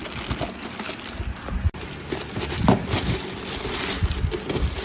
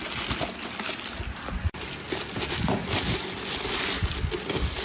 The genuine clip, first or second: first